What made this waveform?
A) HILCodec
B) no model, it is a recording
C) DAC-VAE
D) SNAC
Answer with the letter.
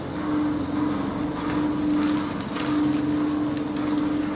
B